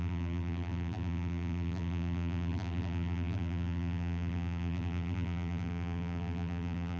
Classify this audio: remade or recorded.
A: remade